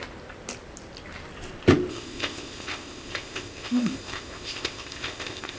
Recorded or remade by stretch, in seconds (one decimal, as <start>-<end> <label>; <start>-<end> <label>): 0.0-1.9 recorded; 1.9-5.6 remade